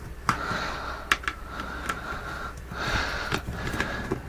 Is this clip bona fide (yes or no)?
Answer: yes